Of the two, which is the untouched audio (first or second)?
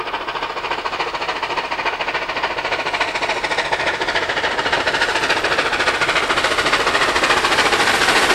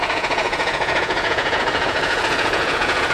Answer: first